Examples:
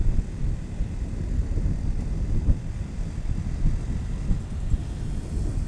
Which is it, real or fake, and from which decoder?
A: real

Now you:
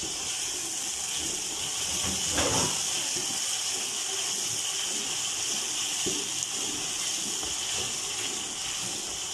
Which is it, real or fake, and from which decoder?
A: real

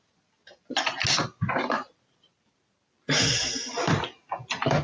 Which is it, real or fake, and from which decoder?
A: real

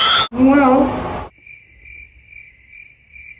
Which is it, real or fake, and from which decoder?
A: real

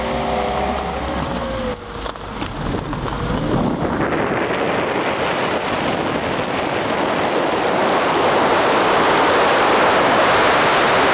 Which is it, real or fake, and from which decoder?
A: real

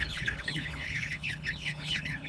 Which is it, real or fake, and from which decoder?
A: fake, codec, HILCodec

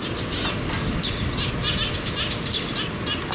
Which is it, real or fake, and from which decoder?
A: real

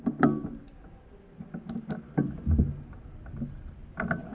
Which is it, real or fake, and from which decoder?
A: real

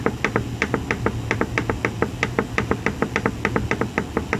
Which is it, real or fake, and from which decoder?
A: real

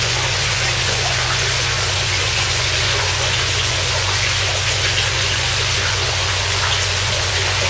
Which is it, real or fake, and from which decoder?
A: fake, vocoder, Vocos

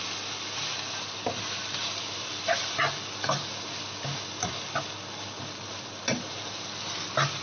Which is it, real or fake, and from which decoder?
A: real